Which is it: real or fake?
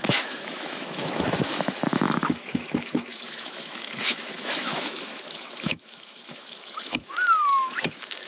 fake